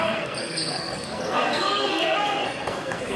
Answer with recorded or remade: remade